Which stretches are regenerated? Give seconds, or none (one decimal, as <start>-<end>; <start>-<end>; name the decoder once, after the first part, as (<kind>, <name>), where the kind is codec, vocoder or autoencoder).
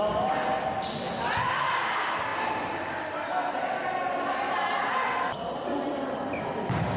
none